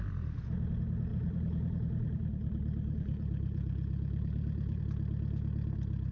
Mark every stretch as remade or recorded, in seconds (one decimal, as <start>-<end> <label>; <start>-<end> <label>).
0.0-1.1 recorded; 1.1-4.8 remade; 4.8-6.1 recorded